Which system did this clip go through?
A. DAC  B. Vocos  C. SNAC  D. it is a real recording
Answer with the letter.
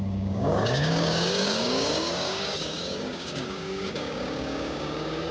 A